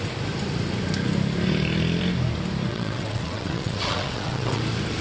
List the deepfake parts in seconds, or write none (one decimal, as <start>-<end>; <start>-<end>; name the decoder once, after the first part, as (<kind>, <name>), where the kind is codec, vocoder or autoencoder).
2.7-4.6 (vocoder, WaveNeXt)